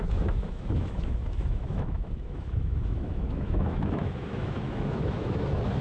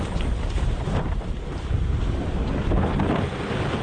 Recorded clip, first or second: second